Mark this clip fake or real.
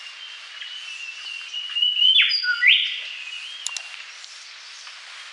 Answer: real